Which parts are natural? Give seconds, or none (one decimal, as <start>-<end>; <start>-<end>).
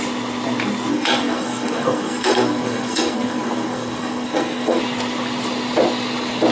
0.0-0.9; 4.8-6.5